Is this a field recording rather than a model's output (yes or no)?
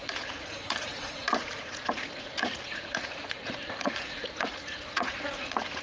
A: no